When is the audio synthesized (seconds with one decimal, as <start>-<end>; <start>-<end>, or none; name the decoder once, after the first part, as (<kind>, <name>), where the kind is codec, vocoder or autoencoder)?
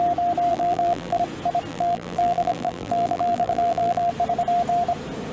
0.5-1.2 (vocoder, BigVGAN v2); 1.7-4.1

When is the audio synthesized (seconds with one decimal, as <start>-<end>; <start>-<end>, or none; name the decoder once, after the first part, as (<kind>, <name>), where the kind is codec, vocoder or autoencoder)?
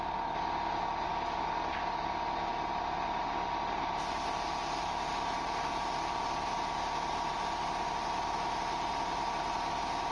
none